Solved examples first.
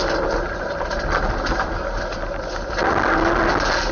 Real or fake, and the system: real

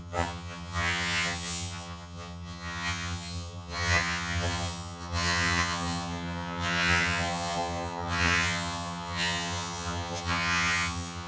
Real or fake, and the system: fake, vocoder, HiFi-GAN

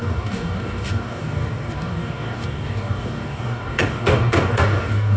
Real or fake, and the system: fake, codec, DAC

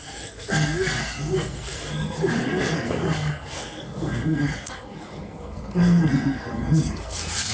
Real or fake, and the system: fake, codec, SNAC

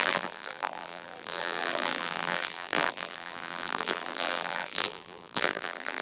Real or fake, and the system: fake, vocoder, BigVGAN v2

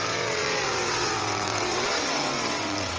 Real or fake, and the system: fake, vocoder, WaveNeXt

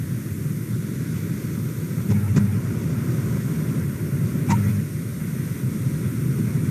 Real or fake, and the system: real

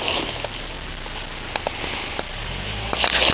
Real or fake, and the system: real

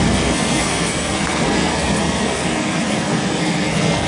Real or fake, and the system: fake, codec, SNAC